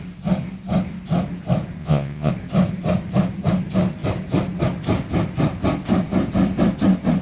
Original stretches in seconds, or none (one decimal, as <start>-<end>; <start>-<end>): 0.0-1.8; 2.3-7.2